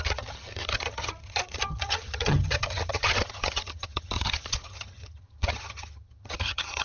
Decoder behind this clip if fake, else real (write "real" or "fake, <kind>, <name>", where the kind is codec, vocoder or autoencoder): fake, vocoder, HiFi-GAN